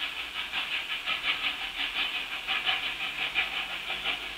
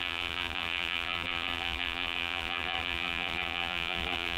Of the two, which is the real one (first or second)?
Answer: first